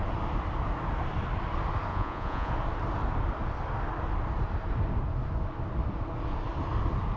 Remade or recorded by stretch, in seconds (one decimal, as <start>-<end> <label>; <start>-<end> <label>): 0.0-1.9 recorded; 1.9-2.5 remade; 2.5-7.2 recorded